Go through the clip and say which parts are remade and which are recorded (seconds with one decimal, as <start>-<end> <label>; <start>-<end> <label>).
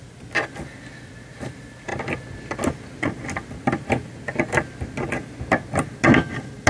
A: 0.0-6.7 recorded